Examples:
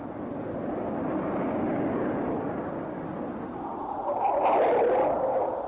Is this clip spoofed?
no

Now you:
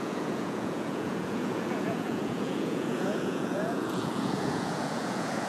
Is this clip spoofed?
yes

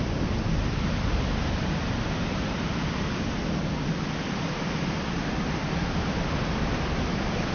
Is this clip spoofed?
no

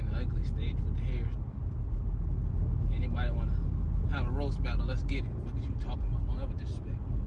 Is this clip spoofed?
no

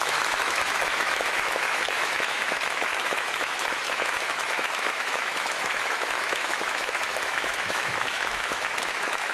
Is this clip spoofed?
yes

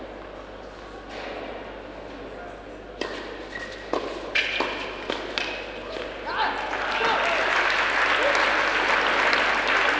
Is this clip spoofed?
no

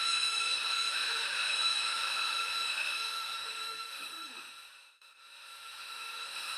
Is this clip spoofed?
yes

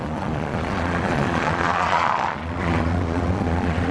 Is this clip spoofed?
yes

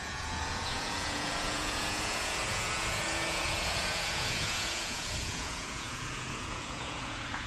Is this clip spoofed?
yes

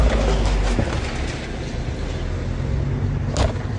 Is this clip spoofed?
no